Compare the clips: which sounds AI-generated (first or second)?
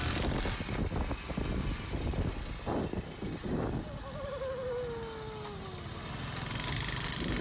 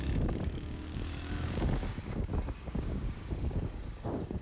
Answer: second